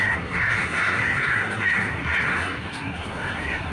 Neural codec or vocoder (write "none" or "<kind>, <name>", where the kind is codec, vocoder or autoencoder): codec, SNAC